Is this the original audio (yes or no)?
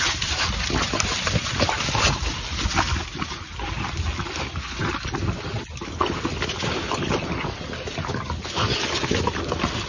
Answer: yes